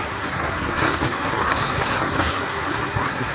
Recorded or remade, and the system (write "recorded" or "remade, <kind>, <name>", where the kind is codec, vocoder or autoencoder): remade, codec, SNAC